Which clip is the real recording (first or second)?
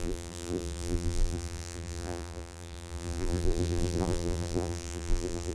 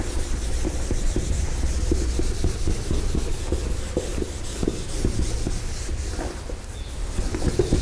second